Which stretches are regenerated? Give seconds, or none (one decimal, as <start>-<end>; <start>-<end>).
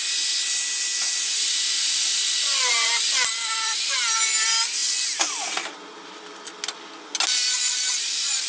none